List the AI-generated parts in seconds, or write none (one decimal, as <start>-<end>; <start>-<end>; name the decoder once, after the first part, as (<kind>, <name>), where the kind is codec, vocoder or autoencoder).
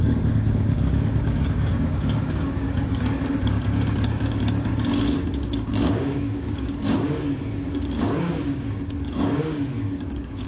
0.0-4.7 (codec, DAC); 5.2-10.5